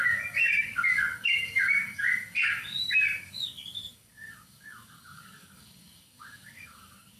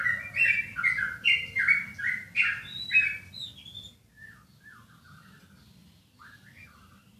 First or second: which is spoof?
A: first